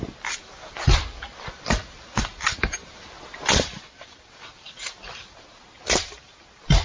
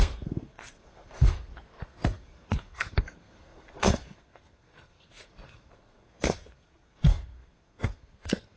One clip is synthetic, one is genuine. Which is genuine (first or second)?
first